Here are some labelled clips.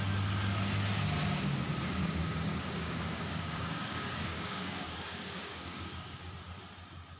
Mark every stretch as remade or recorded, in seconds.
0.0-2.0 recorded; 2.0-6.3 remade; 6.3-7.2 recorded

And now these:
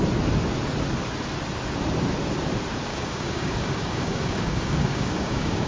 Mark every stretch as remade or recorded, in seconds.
0.0-2.9 recorded; 2.9-5.7 remade